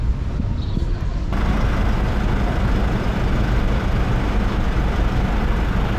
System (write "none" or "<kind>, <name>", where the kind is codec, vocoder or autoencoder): none